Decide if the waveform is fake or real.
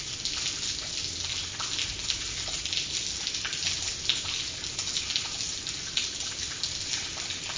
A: real